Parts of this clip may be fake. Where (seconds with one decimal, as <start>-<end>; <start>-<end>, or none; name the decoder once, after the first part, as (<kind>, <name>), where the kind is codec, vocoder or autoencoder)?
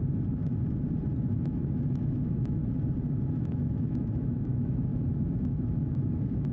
1.3-2.6 (autoencoder, DAC-VAE); 3.3-6.5